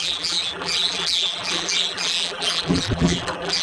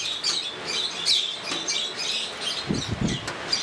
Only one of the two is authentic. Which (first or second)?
second